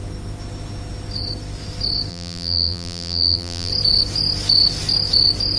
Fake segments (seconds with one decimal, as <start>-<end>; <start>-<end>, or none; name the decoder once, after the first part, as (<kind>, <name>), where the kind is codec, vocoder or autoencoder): 2.1-3.7 (vocoder, BigVGAN v2)